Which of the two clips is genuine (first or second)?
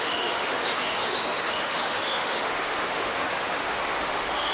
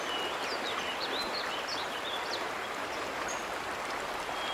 second